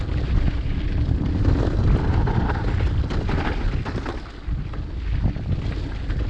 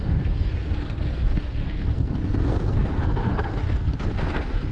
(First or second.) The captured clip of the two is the first